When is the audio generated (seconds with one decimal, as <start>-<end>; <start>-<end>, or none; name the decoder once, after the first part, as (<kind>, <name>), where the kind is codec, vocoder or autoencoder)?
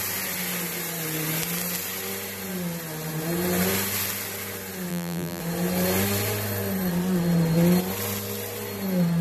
4.9-5.4 (vocoder, BigVGAN v2)